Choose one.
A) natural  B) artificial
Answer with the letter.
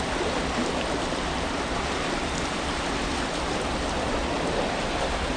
A